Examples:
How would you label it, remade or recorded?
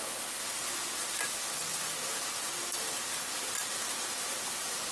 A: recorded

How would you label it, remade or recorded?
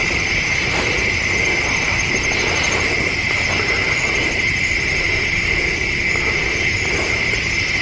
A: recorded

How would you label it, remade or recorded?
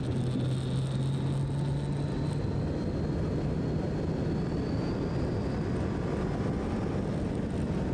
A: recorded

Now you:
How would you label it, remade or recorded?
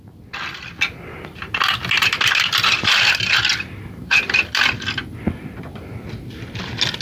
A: recorded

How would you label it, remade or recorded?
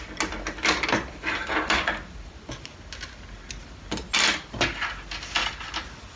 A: recorded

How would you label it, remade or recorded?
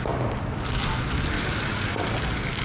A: recorded